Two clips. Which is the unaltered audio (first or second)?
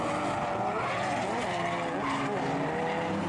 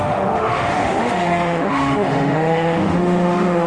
first